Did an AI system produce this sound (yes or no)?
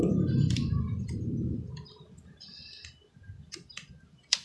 yes